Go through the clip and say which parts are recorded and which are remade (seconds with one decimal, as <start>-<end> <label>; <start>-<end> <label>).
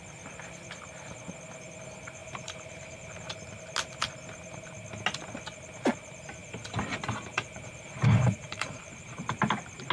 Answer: 0.0-2.2 recorded; 2.2-3.3 remade; 3.3-6.4 recorded; 6.4-9.2 remade; 9.2-9.9 recorded